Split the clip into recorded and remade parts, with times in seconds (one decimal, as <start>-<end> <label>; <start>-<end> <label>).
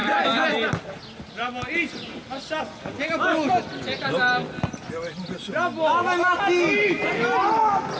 0.0-8.0 recorded